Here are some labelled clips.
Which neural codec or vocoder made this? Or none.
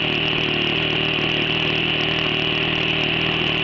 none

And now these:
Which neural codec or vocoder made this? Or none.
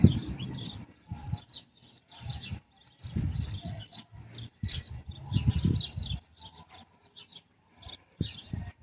vocoder, BigVGAN v2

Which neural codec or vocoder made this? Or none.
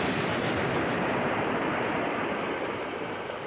none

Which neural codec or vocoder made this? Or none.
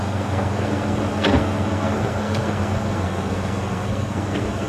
codec, SNAC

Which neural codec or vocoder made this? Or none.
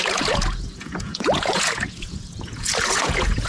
vocoder, Vocos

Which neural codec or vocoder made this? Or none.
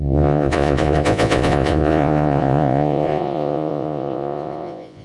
vocoder, Vocos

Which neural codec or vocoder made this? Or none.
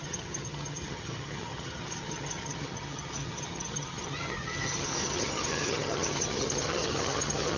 vocoder, HiFi-GAN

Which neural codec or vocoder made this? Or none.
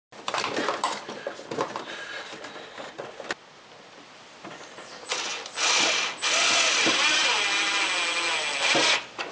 none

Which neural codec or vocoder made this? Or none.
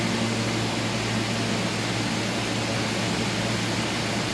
none